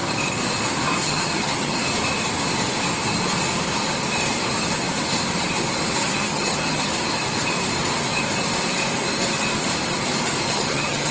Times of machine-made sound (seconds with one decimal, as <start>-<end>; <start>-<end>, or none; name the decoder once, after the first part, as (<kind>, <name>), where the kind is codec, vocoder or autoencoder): 1.0-1.8 (vocoder, HiFi-GAN); 6.0-6.9; 10.5-11.1